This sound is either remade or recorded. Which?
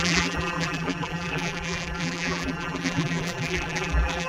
remade